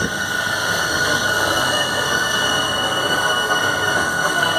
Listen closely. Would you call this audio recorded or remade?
remade